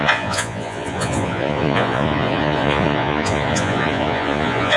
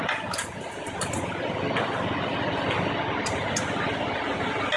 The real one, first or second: second